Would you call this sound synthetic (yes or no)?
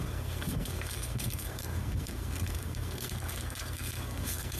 yes